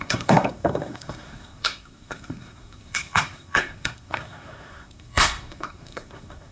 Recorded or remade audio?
remade